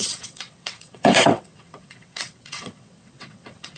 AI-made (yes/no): yes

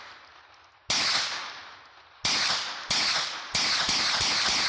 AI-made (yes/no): no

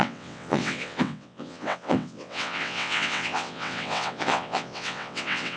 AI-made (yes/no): yes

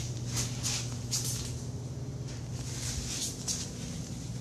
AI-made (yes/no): no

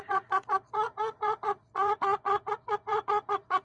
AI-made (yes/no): yes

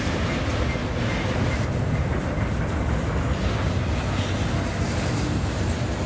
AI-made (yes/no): no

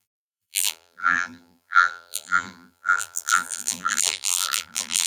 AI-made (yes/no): yes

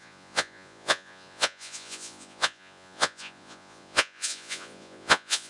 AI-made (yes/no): yes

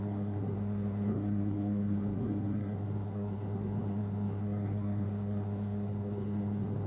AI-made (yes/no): yes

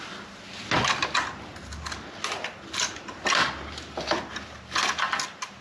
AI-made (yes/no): no